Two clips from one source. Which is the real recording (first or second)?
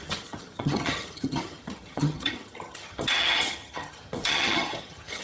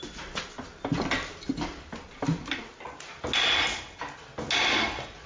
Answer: second